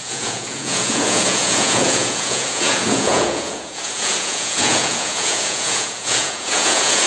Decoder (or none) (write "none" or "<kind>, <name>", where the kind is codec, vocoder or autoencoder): vocoder, Vocos